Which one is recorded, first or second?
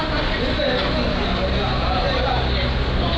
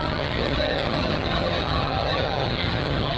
first